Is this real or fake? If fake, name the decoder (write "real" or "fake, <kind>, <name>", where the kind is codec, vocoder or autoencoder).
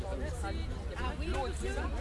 real